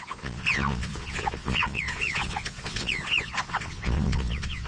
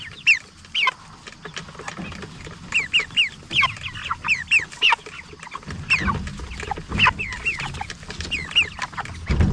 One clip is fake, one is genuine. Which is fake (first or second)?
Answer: first